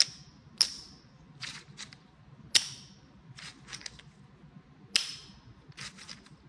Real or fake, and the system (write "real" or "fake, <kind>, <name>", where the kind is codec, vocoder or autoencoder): real